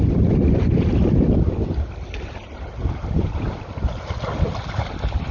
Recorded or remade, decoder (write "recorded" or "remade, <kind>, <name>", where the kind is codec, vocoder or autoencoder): recorded